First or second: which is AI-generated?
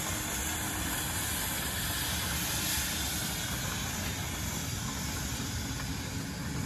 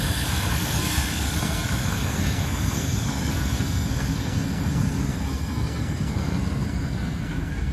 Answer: second